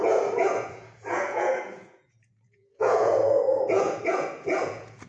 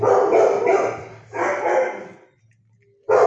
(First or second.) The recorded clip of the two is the second